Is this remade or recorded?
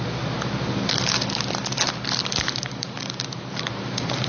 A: recorded